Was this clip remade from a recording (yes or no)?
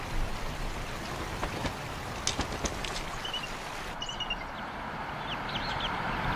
no